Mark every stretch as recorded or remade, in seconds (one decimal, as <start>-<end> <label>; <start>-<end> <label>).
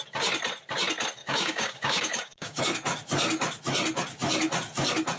0.0-1.2 recorded; 1.2-2.6 remade; 2.6-5.2 recorded